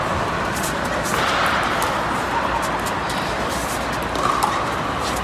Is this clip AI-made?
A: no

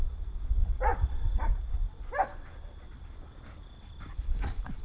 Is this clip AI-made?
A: no